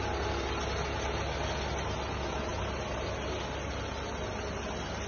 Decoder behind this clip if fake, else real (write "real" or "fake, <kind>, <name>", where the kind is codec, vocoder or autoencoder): real